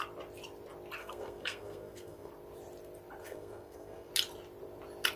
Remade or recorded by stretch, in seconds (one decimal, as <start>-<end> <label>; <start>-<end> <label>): 0.0-1.0 recorded; 1.0-2.3 remade; 2.3-3.2 recorded; 3.2-4.1 remade; 4.1-5.2 recorded